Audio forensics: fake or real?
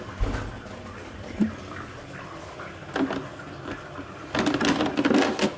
real